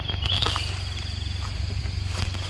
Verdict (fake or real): real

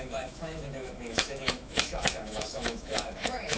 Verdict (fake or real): fake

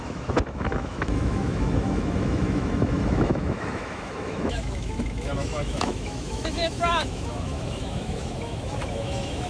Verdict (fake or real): fake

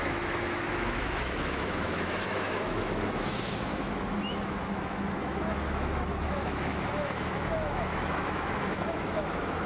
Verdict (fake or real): fake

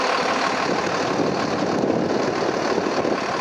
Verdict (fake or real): real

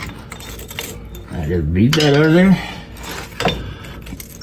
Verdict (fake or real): real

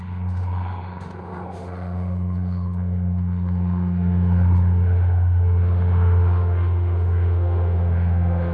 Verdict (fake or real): fake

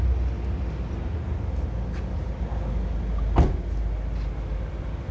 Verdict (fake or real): real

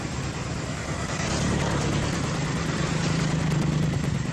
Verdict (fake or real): real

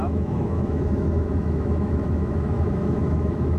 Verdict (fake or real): fake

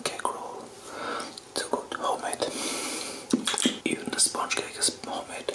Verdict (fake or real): real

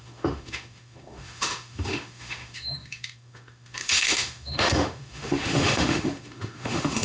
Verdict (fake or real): fake